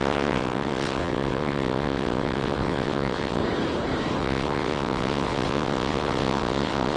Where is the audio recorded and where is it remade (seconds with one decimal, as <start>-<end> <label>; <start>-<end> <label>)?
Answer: 0.0-3.4 remade; 3.4-4.2 recorded; 4.2-7.0 remade